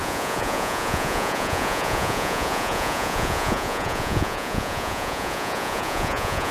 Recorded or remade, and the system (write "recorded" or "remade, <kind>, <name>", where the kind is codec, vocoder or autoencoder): remade, vocoder, Vocos